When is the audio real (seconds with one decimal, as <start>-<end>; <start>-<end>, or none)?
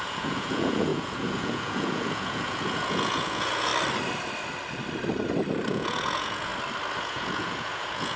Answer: 3.7-5.7; 6.5-7.0